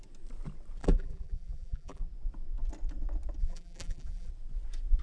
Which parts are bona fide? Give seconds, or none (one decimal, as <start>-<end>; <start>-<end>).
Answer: 0.0-0.8; 2.0-3.4; 4.3-5.0